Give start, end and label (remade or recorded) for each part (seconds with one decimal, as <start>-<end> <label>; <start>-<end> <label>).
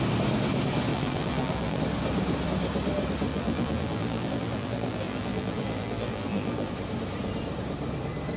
0.0-0.9 recorded; 0.9-1.8 remade; 1.8-3.3 recorded; 3.3-6.7 remade; 6.7-8.4 recorded